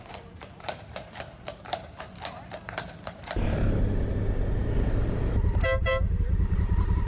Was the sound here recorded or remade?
remade